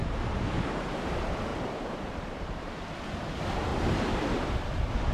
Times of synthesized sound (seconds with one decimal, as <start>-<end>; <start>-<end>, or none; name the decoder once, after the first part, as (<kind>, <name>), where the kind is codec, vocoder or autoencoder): 1.5-2.7 (vocoder, BigVGAN v2); 3.7-4.2